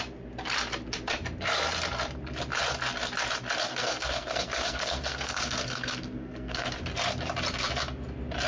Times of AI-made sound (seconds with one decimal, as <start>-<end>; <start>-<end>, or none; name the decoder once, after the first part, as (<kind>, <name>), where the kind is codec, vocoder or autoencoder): 3.7-6.8 (codec, SNAC)